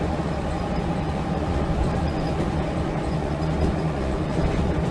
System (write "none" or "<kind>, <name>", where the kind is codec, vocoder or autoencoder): vocoder, Vocos